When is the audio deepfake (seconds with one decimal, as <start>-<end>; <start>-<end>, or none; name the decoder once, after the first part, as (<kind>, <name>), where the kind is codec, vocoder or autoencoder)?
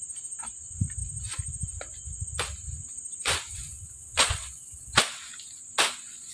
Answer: 3.5-5.0 (vocoder, WaveNeXt)